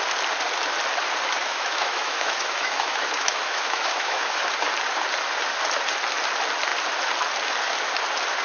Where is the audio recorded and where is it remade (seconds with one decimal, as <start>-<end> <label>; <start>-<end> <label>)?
0.0-1.4 recorded; 1.4-4.4 remade; 4.4-8.4 recorded